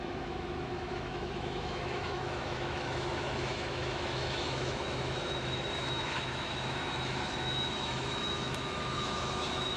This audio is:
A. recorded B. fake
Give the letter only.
B